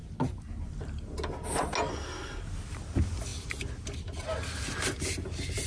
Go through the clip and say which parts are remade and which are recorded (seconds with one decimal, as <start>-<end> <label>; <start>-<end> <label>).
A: 0.0-1.9 recorded; 1.9-2.4 remade; 2.4-5.7 recorded